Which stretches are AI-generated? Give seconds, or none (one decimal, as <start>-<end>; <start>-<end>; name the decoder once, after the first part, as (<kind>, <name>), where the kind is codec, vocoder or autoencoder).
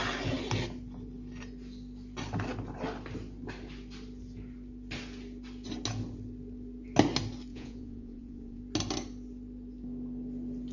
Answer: 7.5-8.6 (vocoder, Vocos)